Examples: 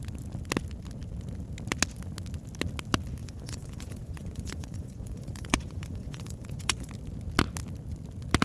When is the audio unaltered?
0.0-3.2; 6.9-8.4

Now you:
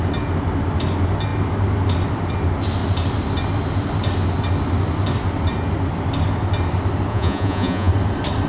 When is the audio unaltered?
0.0-7.1; 7.9-8.5

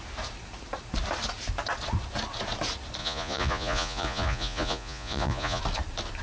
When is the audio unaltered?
0.0-3.0; 5.6-6.2